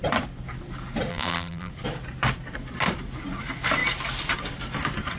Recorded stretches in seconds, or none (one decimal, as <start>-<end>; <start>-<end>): 0.0-1.1; 1.7-5.2